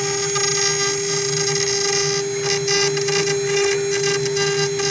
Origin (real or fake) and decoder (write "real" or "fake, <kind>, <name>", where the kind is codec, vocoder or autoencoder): real